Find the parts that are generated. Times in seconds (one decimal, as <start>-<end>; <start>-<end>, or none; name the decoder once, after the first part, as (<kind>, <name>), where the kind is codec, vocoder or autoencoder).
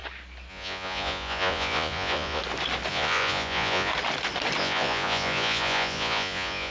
0.5-2.4 (vocoder, Vocos); 2.9-3.9; 4.6-6.7